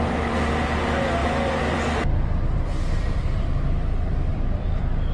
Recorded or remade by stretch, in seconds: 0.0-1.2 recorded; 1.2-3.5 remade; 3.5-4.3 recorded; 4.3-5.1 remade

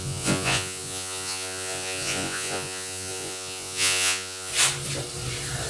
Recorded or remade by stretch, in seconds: 0.0-4.5 remade; 4.5-5.7 recorded

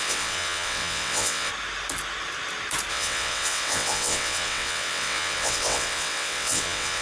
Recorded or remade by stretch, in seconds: 0.0-1.5 remade; 1.5-2.9 recorded; 2.9-7.0 remade

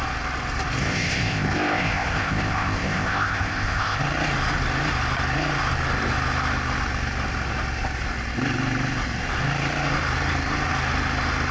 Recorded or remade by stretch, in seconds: 0.0-0.8 recorded; 0.8-4.0 remade; 4.0-11.5 recorded

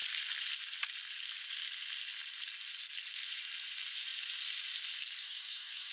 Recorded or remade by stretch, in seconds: 0.0-5.2 recorded; 5.2-5.9 remade